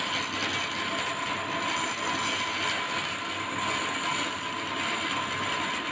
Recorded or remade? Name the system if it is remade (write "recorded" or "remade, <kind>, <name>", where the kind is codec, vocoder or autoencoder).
recorded